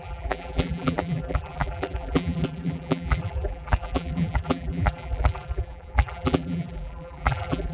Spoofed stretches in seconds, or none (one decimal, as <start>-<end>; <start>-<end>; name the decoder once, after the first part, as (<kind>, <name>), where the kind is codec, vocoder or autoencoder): 0.0-7.7 (vocoder, BigVGAN v2)